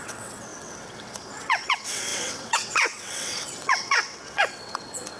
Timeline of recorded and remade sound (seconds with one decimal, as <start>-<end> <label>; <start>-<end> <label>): 0.0-5.2 remade